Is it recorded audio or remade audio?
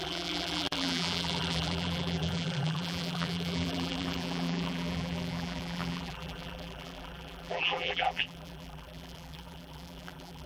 remade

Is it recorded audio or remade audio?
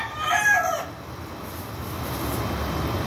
recorded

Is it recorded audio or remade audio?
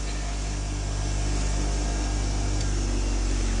recorded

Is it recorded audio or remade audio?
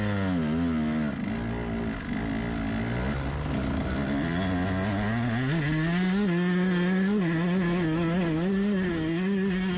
recorded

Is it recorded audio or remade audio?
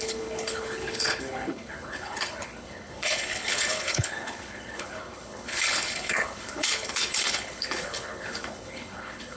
remade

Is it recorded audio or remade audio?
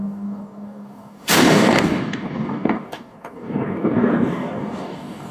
remade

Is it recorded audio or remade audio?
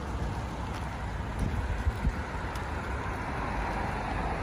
recorded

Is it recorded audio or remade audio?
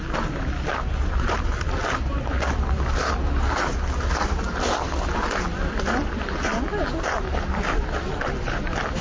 recorded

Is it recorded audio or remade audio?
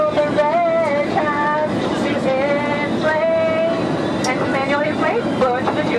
recorded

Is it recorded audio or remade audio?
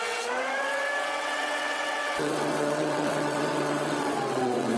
remade